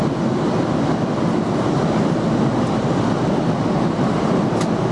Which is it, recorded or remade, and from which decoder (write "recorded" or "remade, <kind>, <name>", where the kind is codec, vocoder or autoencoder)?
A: recorded